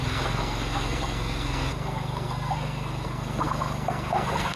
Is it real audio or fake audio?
fake